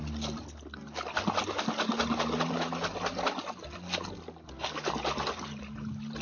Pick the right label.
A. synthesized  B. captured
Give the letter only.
B